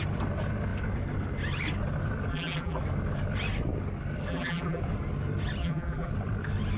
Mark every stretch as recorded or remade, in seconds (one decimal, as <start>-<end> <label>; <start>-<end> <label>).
0.0-2.3 recorded; 2.3-2.8 remade; 2.8-4.3 recorded; 4.3-4.8 remade; 4.8-5.6 recorded; 5.6-6.1 remade; 6.1-6.8 recorded